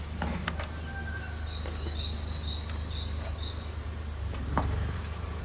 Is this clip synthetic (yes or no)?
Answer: no